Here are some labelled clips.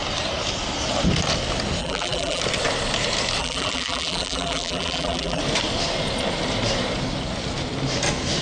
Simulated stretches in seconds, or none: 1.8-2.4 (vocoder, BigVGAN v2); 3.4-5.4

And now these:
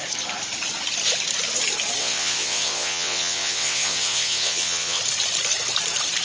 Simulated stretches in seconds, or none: 2.0-5.0 (vocoder, WaveNeXt)

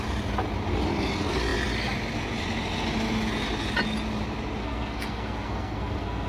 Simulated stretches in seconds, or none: 4.6-6.3 (codec, SNAC)

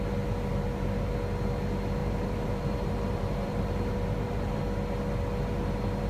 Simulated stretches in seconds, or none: 0.5-1.1 (vocoder, BigVGAN v2); 2.0-4.6